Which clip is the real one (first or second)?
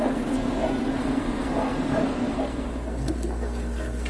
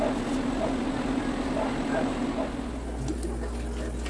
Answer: second